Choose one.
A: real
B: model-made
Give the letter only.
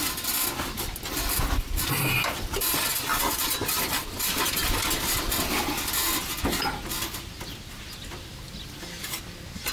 A